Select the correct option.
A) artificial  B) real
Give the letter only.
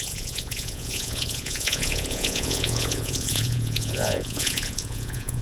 A